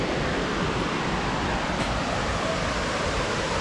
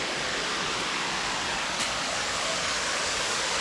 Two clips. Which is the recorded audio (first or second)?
first